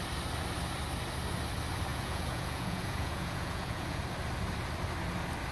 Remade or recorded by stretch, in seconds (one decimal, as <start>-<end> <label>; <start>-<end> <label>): 0.0-1.9 recorded; 1.9-4.0 remade; 4.0-5.5 recorded